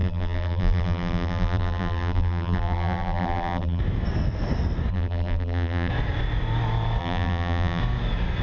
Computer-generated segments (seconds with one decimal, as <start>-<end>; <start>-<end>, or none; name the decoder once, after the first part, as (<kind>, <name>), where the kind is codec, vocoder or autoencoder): 0.0-3.8 (vocoder, BigVGAN v2); 4.9-5.9; 7.0-7.8